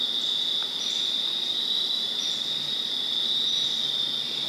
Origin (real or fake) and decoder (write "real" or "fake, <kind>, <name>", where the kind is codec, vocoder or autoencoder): real